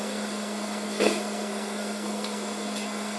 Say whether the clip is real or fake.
fake